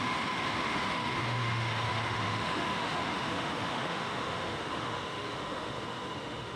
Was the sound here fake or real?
fake